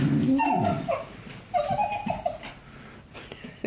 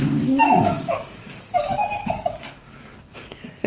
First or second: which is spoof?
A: second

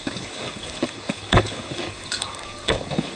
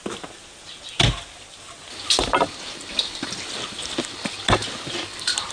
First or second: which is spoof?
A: first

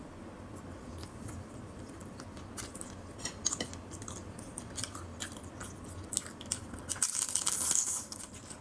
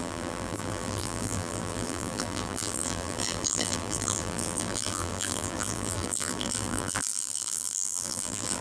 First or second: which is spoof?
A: second